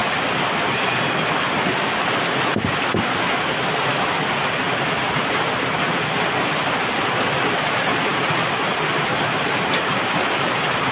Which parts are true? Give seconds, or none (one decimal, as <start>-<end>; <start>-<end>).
0.0-10.9